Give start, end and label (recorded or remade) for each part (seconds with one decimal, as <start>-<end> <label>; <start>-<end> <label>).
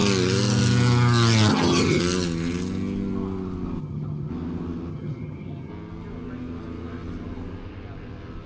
0.0-1.5 recorded; 1.5-2.0 remade; 2.0-3.8 recorded; 3.8-4.3 remade; 4.3-4.9 recorded; 4.9-5.7 remade; 5.7-8.5 recorded